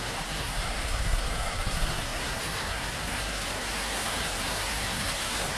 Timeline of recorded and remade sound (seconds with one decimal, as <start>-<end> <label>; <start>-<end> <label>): 0.0-5.6 remade